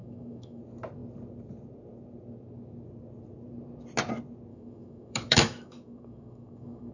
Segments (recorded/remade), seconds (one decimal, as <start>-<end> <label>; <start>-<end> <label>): 0.0-0.6 remade; 0.6-4.5 recorded; 4.5-6.9 remade